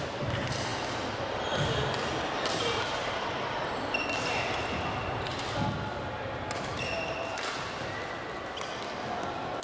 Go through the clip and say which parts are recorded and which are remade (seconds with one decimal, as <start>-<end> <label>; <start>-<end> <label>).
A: 0.0-0.7 recorded; 0.7-2.7 remade; 2.7-9.6 recorded